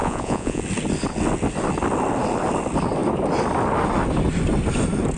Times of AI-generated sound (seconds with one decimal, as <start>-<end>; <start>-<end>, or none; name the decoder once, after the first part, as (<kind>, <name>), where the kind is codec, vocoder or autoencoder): 0.0-0.6 (vocoder, Vocos)